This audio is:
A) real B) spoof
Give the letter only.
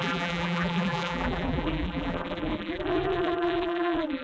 B